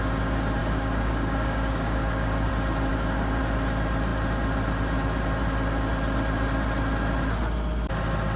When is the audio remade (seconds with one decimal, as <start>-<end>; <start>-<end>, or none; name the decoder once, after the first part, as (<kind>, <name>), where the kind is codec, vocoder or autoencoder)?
0.6-2.5 (codec, DAC); 2.9-3.4